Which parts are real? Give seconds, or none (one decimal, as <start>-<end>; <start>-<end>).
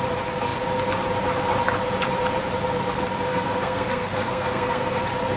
0.0-3.3; 5.0-5.4